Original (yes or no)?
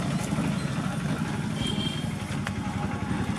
yes